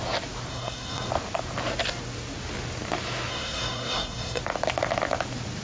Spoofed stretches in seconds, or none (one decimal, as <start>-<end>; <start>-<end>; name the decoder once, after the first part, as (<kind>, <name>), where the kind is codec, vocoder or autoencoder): 0.5-1.1 (codec, SNAC); 3.3-4.4